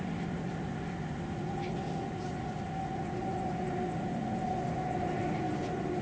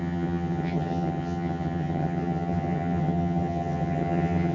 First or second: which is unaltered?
first